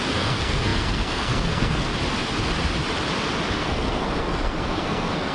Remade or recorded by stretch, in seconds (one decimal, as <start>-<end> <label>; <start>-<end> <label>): 0.0-1.9 remade; 1.9-3.6 recorded; 3.6-5.3 remade